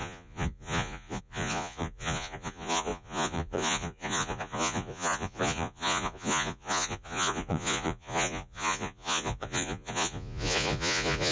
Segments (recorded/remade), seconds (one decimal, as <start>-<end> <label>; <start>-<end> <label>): 0.0-11.3 remade